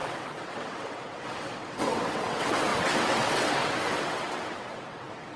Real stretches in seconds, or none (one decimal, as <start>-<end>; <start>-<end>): none